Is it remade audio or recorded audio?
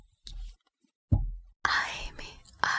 recorded